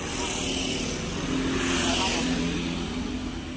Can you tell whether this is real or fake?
real